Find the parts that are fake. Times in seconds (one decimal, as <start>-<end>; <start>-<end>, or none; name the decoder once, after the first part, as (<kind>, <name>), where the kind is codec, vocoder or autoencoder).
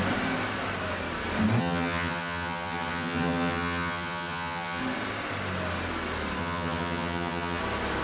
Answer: 1.6-4.8 (vocoder, HiFi-GAN); 6.4-7.6